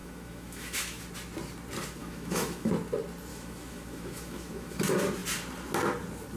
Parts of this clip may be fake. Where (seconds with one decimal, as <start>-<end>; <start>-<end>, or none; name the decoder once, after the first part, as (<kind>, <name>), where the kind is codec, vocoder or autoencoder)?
0.0-1.0 (autoencoder, DAC-VAE); 2.0-2.7; 3.3-4.8